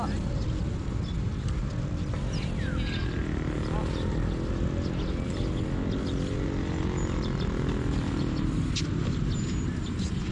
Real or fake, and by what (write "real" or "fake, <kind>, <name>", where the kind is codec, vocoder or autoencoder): real